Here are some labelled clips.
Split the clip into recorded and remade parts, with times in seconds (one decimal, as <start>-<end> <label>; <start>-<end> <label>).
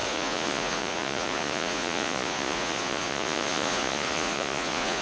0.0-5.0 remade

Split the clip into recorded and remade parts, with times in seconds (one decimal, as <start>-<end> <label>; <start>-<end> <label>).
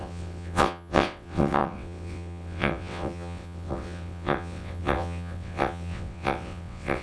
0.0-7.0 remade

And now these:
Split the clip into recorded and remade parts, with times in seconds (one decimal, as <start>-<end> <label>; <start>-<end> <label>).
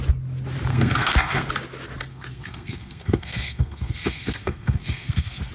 0.0-0.7 recorded; 0.7-1.5 remade; 1.5-2.1 recorded; 2.1-5.5 remade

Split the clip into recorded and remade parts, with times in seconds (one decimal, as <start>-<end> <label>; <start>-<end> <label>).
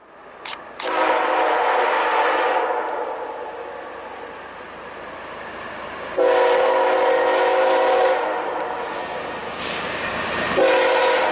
0.0-9.4 recorded; 9.4-10.3 remade; 10.3-11.3 recorded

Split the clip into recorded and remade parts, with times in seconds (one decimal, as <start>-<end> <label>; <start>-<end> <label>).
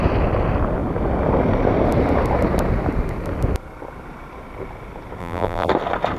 0.0-5.2 recorded; 5.2-5.7 remade; 5.7-6.2 recorded